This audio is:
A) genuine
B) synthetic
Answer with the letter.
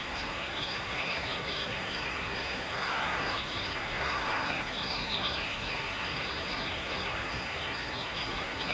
B